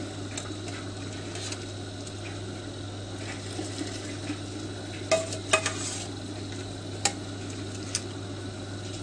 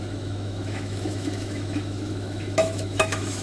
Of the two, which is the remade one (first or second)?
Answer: second